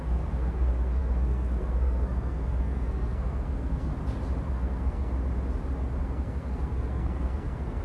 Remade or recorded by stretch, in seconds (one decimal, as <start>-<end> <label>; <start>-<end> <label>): 0.0-3.9 remade; 3.9-4.5 recorded; 4.5-5.1 remade; 5.1-6.0 recorded; 6.0-7.8 remade